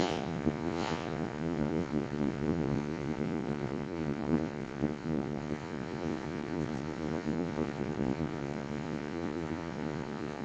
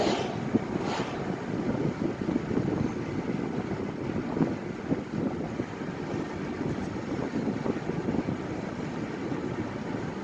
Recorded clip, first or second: second